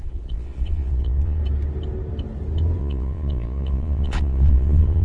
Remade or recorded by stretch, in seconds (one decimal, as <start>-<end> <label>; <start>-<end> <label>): 0.0-1.4 remade; 1.4-2.8 recorded; 2.8-5.0 remade